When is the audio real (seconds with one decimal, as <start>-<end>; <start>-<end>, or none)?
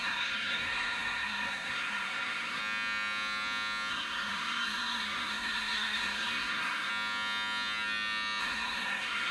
2.6-3.9; 6.9-8.4